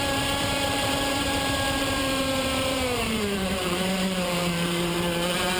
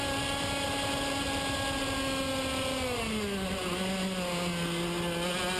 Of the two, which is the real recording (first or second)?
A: second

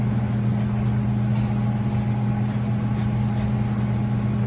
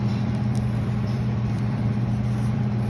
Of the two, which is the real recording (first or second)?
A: first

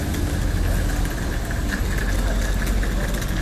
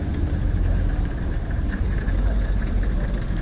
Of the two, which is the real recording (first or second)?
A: first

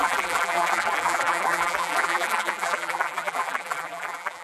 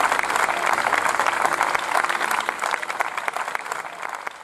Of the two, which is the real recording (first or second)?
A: second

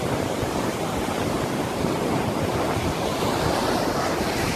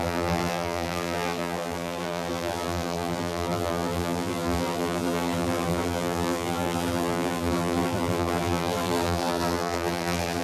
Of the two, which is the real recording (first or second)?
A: first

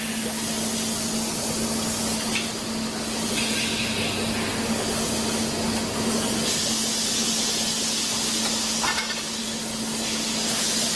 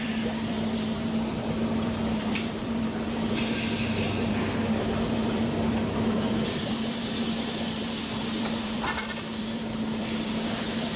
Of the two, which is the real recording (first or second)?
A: first